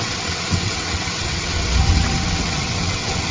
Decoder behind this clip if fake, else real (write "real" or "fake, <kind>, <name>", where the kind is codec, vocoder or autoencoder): fake, vocoder, WaveNeXt